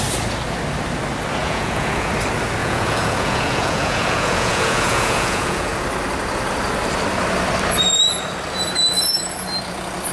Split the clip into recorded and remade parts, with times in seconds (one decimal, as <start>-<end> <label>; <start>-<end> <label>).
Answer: 0.0-1.4 recorded; 1.4-2.1 remade; 2.1-2.6 recorded; 2.6-5.7 remade; 5.7-10.1 recorded